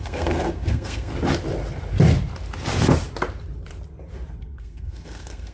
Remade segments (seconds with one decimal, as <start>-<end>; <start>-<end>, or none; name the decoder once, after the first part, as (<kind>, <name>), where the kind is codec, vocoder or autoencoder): 0.0-1.1 (codec, SNAC); 4.4-5.5